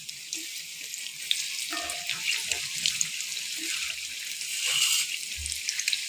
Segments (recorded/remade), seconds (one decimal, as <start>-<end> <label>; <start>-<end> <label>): 0.0-6.1 recorded